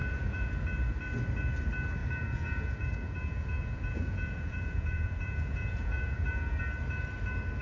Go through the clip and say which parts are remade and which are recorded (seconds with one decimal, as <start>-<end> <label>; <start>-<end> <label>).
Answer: 0.0-0.5 remade; 0.5-2.0 recorded; 2.0-6.6 remade; 6.6-7.6 recorded